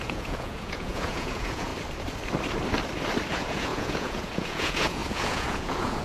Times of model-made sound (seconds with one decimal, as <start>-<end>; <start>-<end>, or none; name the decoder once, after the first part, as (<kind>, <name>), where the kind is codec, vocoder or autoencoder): 0.0-1.7 (vocoder, Vocos); 3.3-6.0